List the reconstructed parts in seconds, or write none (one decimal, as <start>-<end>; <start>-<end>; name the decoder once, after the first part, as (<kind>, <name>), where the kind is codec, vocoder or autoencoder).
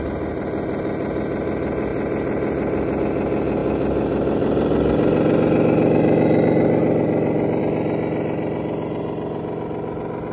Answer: none